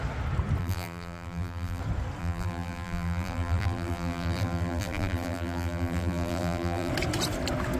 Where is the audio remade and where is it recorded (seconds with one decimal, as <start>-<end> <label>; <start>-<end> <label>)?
0.0-0.6 recorded; 0.6-1.8 remade; 1.8-2.2 recorded; 2.2-6.9 remade; 6.9-7.8 recorded